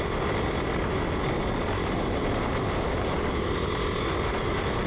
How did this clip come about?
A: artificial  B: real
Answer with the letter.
B